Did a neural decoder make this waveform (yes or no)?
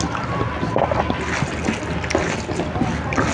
no